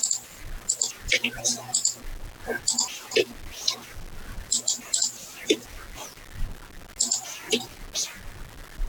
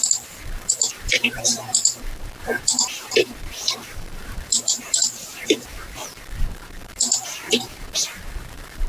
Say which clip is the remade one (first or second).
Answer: second